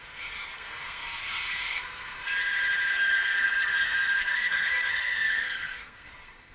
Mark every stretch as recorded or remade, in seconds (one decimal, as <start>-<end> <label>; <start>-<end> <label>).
0.0-2.3 remade; 2.3-2.9 recorded; 2.9-6.5 remade

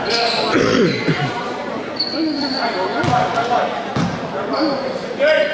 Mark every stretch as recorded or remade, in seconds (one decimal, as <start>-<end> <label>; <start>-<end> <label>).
0.0-1.2 recorded; 1.2-1.9 remade; 1.9-5.5 recorded

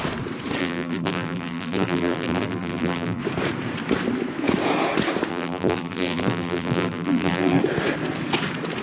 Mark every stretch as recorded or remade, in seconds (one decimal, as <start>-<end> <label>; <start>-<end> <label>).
0.0-0.6 recorded; 0.6-3.2 remade; 3.2-5.3 recorded; 5.3-7.6 remade; 7.6-8.8 recorded

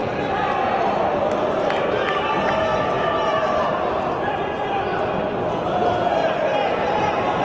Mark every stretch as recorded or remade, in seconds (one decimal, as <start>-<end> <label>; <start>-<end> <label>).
0.0-7.4 recorded

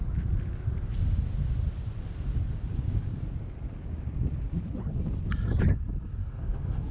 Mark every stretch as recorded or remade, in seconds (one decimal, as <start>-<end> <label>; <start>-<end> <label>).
0.0-6.2 recorded; 6.2-6.9 remade

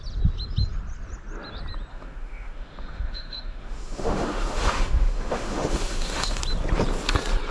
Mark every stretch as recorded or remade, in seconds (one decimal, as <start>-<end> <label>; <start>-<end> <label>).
0.0-1.9 recorded; 1.9-6.4 remade; 6.4-7.5 recorded